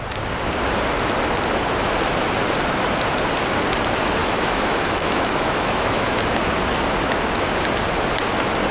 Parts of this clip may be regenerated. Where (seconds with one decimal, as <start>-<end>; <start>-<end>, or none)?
4.2-6.2